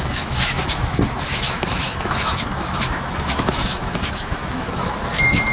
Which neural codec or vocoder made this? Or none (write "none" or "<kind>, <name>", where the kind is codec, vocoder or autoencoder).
autoencoder, DAC-VAE